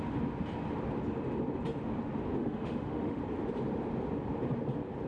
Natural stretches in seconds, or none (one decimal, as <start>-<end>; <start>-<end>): 0.0-2.4; 3.2-5.1

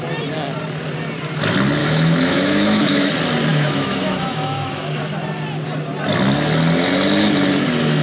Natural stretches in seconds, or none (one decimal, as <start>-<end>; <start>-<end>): 0.0-1.8; 3.1-3.5; 5.0-8.0

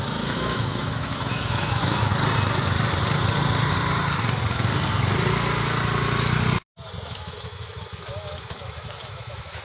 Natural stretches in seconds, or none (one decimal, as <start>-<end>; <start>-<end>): 2.1-7.1

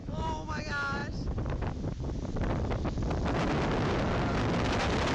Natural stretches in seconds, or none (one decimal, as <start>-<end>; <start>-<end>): 0.6-5.1

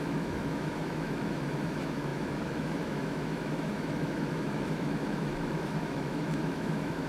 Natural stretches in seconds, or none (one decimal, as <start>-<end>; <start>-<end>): none